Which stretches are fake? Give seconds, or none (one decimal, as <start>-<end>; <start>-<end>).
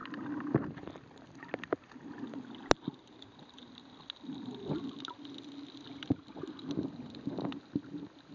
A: 0.0-2.5; 3.6-4.8; 7.5-8.3